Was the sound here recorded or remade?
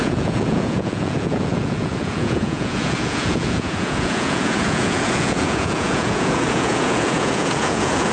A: remade